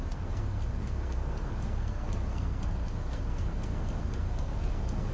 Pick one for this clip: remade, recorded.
remade